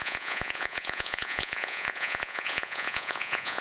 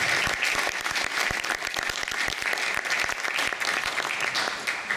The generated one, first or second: first